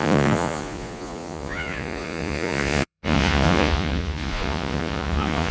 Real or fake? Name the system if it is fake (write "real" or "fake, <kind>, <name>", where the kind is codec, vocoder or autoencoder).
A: fake, vocoder, Vocos